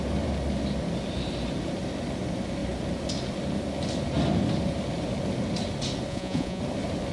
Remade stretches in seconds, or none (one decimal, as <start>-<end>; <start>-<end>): 6.1-6.6